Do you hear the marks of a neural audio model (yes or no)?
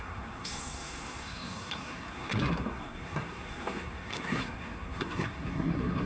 yes